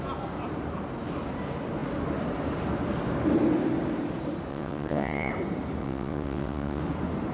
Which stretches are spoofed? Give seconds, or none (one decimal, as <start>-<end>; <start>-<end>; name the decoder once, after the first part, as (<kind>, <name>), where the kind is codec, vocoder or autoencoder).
4.5-5.3 (vocoder, WaveNeXt); 5.8-6.8